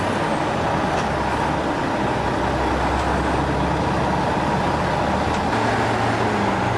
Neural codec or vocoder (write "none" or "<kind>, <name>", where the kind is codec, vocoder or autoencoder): none